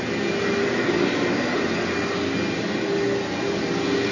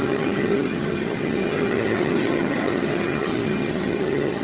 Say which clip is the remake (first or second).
second